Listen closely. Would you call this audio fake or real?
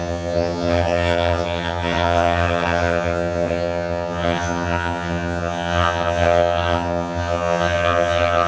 fake